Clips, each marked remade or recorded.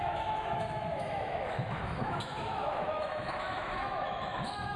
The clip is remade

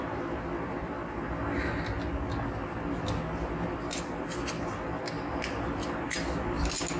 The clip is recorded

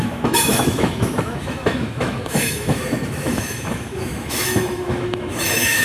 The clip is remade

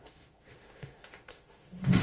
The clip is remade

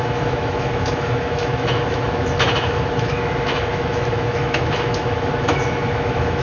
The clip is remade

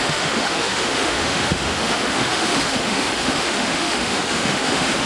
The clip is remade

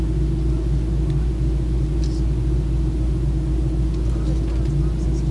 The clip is recorded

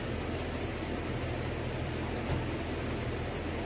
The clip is recorded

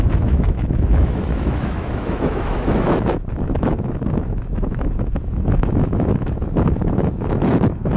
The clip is remade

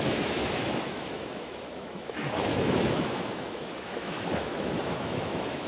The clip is remade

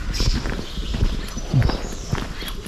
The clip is recorded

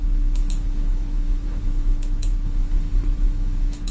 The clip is remade